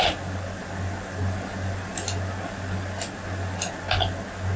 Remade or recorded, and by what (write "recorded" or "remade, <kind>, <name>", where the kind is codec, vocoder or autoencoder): recorded